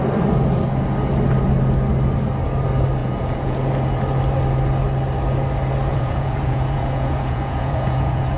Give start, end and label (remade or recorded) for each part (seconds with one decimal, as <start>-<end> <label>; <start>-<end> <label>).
0.0-3.0 recorded; 3.0-3.6 remade; 3.6-5.9 recorded; 5.9-8.4 remade